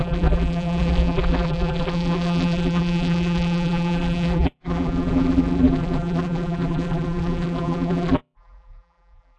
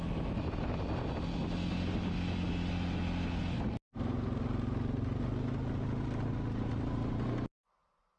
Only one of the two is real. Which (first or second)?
second